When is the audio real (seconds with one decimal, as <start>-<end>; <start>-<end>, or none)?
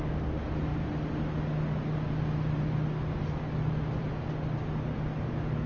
0.0-5.7